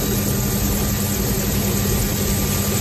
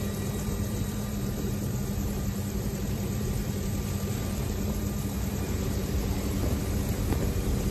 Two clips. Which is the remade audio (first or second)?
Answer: second